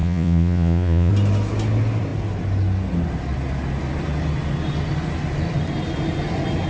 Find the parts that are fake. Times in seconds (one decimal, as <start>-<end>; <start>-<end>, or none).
0.0-1.1

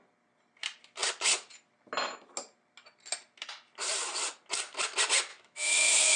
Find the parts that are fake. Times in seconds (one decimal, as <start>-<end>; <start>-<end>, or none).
5.3-6.2

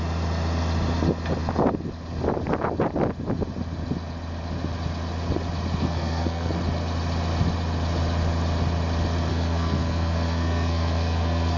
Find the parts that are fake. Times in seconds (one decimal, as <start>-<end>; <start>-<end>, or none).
5.8-6.5; 9.3-11.6

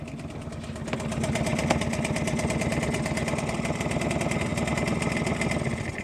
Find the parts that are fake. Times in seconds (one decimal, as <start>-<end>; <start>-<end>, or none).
none

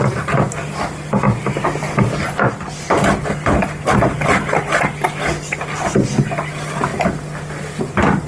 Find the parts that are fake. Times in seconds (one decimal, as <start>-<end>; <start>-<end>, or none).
none

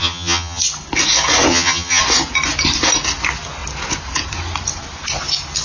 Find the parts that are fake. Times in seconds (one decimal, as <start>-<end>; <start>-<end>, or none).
0.0-0.6; 1.5-2.0

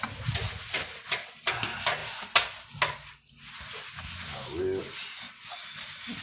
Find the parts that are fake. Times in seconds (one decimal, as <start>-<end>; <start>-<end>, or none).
none

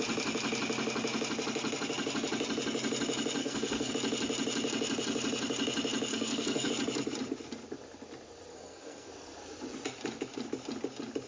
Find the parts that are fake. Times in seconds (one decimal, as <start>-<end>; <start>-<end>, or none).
3.4-3.9; 6.1-6.7; 8.5-9.1